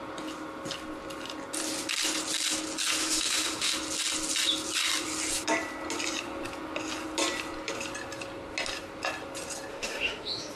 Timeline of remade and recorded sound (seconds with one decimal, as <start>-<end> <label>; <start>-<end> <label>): 0.0-3.0 recorded; 3.0-3.7 remade; 3.7-9.7 recorded; 9.7-10.6 remade